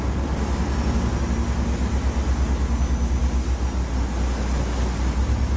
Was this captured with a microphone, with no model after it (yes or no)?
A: yes